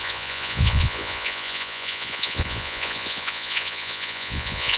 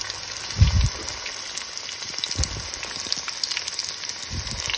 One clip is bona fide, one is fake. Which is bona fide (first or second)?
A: second